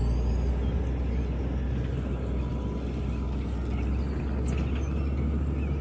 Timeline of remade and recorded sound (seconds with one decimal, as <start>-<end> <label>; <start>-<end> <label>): 0.0-5.8 recorded